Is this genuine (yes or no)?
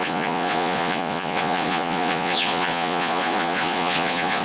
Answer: no